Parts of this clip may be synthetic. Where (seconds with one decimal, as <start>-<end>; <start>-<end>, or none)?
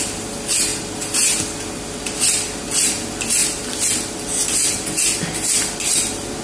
none